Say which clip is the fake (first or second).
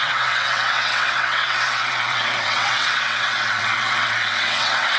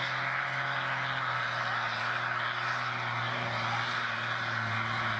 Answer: first